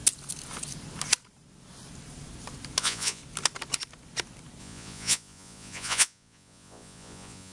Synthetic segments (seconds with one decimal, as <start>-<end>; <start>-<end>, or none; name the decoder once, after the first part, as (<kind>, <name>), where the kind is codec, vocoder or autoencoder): 2.8-3.2 (vocoder, Vocos); 4.6-7.5